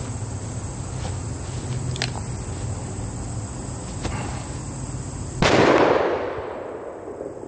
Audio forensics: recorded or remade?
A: recorded